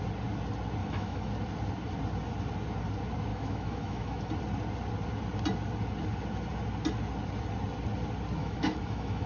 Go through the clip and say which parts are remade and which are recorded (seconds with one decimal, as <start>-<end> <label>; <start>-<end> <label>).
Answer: 0.0-0.8 recorded; 0.8-1.3 remade; 1.3-3.3 recorded; 3.3-4.3 remade; 4.3-8.4 recorded; 8.4-9.3 remade